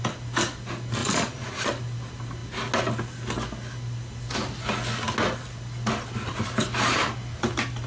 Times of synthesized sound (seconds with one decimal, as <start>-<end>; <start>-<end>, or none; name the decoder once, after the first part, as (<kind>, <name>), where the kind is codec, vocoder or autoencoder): 1.0-1.7 (vocoder, Vocos)